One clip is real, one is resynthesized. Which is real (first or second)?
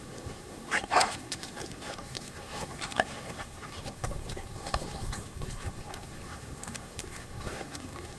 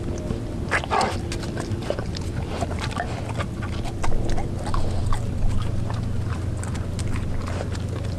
second